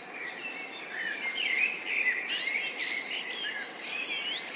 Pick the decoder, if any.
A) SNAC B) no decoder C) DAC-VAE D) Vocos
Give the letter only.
B